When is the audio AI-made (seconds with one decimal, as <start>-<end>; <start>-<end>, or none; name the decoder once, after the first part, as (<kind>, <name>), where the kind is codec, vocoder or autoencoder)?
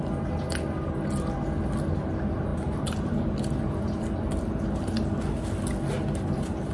none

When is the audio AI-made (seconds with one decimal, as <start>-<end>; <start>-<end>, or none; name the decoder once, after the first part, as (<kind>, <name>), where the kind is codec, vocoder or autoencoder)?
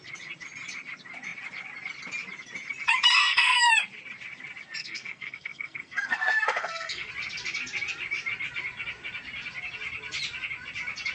3.2-3.7 (codec, SNAC); 4.8-7.1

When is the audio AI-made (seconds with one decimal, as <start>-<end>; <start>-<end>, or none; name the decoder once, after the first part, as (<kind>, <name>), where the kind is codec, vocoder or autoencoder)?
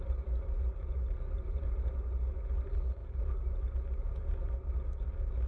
none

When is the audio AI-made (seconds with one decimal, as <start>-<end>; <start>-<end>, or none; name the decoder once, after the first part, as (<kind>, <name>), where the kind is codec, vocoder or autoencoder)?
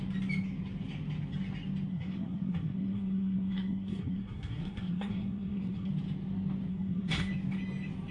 1.9-5.9 (codec, SNAC); 6.7-7.3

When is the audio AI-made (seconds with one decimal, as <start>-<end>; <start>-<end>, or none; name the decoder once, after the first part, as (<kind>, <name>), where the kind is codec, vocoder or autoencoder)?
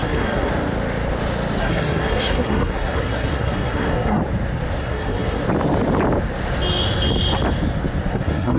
0.0-0.5 (codec, SNAC); 1.6-4.2; 4.8-5.4; 8.1-8.6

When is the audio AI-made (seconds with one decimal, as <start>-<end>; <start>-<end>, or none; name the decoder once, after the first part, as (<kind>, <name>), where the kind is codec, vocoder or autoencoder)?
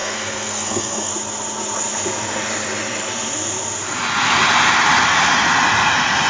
0.0-1.1 (codec, SNAC)